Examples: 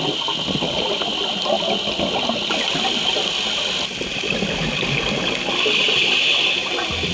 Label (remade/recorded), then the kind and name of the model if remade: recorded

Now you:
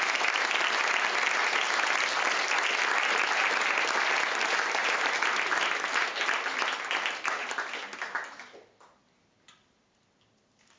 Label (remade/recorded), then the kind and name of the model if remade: recorded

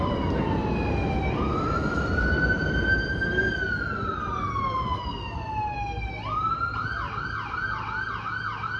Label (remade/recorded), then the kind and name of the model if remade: recorded